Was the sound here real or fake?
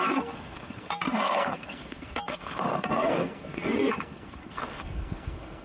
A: fake